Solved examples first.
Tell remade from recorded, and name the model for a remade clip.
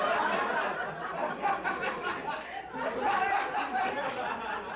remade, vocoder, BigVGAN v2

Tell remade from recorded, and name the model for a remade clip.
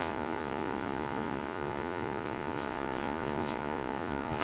remade, vocoder, Vocos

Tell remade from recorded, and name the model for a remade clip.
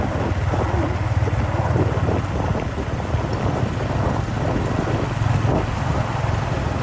recorded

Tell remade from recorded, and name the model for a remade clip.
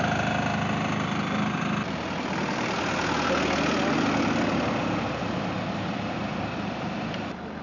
recorded